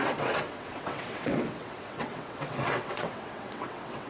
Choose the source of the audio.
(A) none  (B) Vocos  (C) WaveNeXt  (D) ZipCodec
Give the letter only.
C